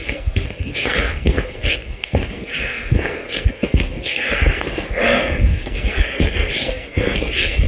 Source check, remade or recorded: remade